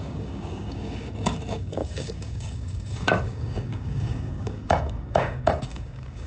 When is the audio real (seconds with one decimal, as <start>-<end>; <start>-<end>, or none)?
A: none